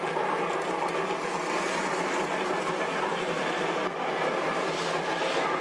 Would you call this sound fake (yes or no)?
no